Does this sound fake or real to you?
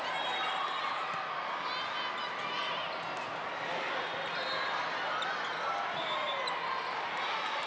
real